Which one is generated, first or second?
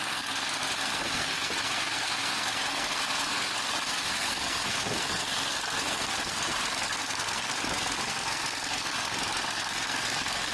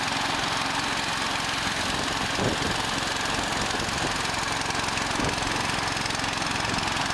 first